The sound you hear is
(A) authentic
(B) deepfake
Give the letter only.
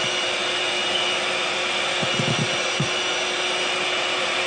A